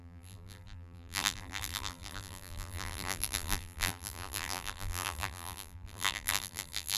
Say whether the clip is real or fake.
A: fake